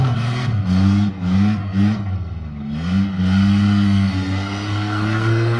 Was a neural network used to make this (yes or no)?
yes